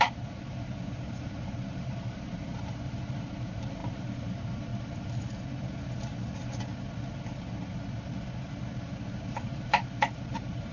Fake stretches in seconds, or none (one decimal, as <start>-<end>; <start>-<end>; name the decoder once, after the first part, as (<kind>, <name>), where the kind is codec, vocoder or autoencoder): 0.0-4.7 (vocoder, BigVGAN v2); 9.3-10.7